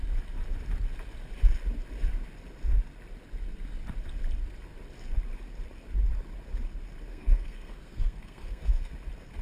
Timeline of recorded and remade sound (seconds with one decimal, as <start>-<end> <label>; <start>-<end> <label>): 0.0-7.1 recorded; 7.1-8.9 remade; 8.9-9.4 recorded